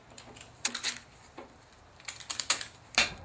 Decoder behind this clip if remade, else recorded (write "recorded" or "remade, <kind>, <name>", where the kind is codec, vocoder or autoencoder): recorded